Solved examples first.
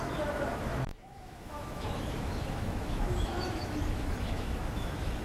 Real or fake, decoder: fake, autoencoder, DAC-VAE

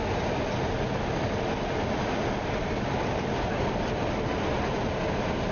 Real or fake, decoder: real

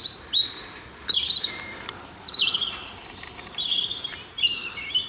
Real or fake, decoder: fake, vocoder, BigVGAN v2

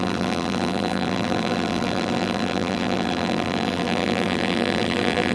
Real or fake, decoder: fake, vocoder, BigVGAN v2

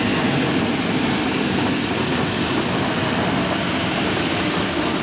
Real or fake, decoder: real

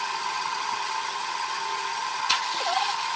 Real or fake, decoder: fake, vocoder, HiFi-GAN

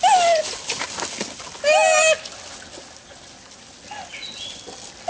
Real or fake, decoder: real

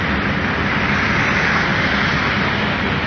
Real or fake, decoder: real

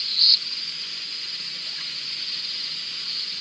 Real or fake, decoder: fake, vocoder, Vocos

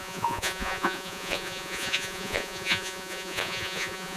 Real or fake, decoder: fake, vocoder, Vocos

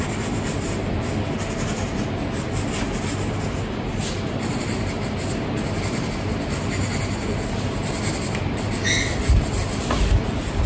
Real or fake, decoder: real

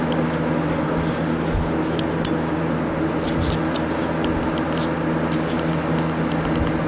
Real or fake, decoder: real